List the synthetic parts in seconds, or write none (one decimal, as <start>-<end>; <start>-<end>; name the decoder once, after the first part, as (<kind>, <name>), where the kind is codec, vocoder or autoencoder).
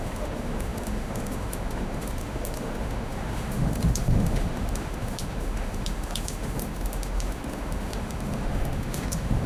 0.0-9.5 (autoencoder, DAC-VAE)